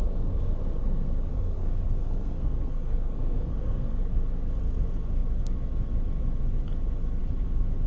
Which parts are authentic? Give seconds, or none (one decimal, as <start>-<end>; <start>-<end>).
0.0-0.8; 4.0-7.9